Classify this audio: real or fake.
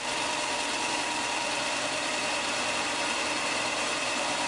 fake